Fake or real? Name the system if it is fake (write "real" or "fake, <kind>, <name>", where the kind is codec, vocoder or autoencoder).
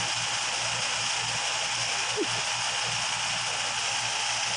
real